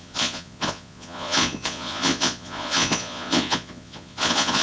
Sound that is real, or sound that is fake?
fake